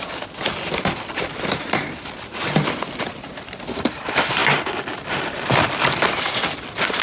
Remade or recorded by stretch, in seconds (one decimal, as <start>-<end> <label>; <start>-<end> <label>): 0.0-4.4 remade; 4.4-5.1 recorded; 5.1-7.0 remade